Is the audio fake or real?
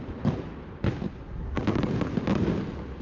real